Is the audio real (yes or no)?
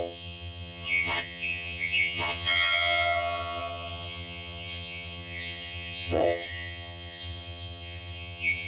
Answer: no